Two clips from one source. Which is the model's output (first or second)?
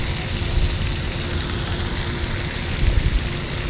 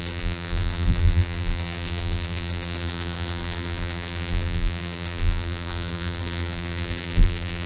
second